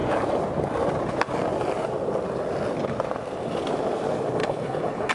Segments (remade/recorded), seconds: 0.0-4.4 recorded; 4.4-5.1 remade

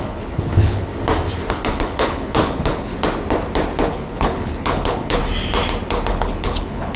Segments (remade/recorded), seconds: 0.0-0.9 remade; 0.9-1.5 recorded; 1.5-2.9 remade; 2.9-3.9 recorded; 3.9-5.2 remade; 5.2-6.1 recorded; 6.1-7.0 remade

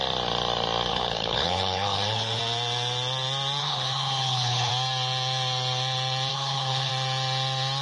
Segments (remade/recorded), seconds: 0.0-0.9 recorded; 0.9-2.4 remade; 2.4-3.6 recorded; 3.6-4.7 remade; 4.7-6.3 recorded; 6.3-6.9 remade; 6.9-7.8 recorded

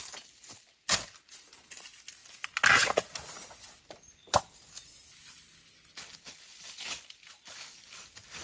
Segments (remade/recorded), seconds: 0.0-8.4 recorded

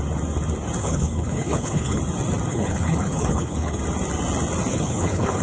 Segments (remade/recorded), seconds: 0.0-0.8 recorded; 0.8-2.0 remade; 2.0-2.5 recorded; 2.5-3.8 remade; 3.8-4.7 recorded; 4.7-5.4 remade

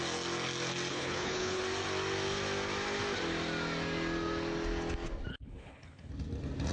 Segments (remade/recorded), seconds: 0.0-0.9 recorded; 0.9-1.6 remade; 1.6-5.3 recorded; 5.3-6.1 remade; 6.1-6.7 recorded

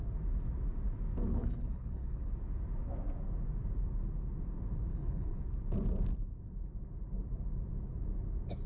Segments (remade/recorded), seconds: 0.0-1.3 recorded; 1.3-2.3 remade; 2.3-4.9 recorded; 4.9-5.4 remade; 5.4-8.7 recorded